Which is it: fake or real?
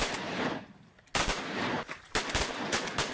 real